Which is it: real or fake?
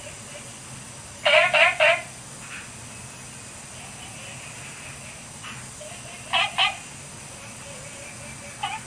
real